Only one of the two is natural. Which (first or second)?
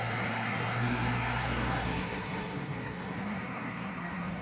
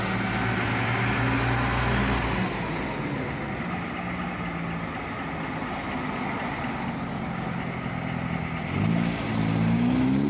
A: second